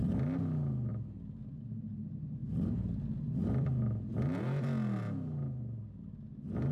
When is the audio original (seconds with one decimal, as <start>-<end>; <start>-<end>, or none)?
0.0-6.7